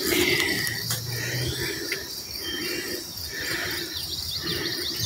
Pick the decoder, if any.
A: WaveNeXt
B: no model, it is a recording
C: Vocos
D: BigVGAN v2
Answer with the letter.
D